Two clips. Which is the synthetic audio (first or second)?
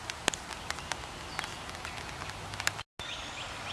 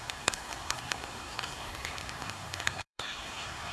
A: second